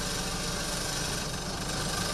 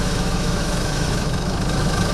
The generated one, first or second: second